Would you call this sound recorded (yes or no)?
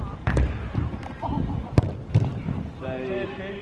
no